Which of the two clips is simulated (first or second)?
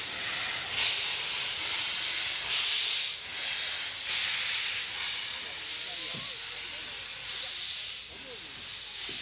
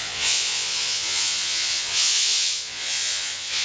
second